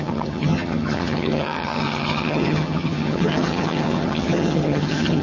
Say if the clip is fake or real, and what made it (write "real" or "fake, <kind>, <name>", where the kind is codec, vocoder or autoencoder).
fake, vocoder, HiFi-GAN